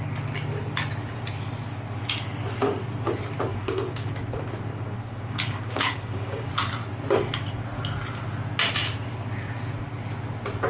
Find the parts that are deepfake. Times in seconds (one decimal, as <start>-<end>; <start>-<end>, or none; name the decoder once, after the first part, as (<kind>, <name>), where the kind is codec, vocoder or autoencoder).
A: 3.5-4.1 (codec, DAC); 4.7-6.5